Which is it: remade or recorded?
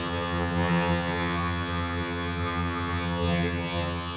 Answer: remade